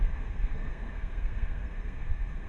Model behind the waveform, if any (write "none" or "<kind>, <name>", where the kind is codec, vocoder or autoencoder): codec, SNAC